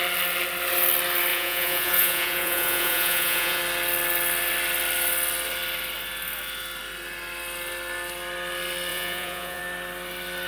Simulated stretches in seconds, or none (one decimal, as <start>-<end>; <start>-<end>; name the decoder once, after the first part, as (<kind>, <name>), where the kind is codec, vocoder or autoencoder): 1.3-3.6 (vocoder, Vocos); 8.9-9.6